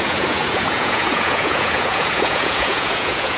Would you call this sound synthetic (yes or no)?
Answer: yes